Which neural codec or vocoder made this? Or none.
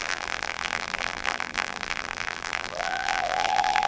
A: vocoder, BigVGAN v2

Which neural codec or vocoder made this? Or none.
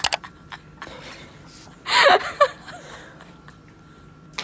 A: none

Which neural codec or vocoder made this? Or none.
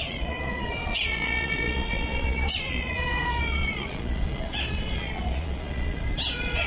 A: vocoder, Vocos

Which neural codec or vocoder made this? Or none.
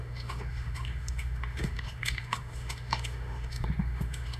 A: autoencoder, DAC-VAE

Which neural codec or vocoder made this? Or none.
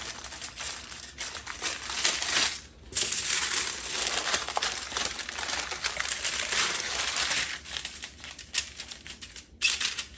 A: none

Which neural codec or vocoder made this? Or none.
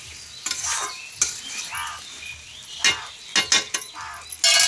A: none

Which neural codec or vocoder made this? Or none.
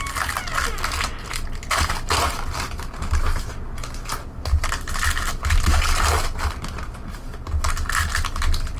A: none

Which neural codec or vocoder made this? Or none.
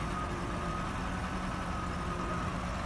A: none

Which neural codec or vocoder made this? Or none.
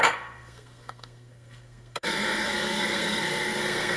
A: codec, SNAC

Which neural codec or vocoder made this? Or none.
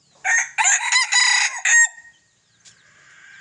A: none